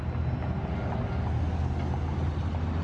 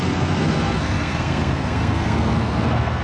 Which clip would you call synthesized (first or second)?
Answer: second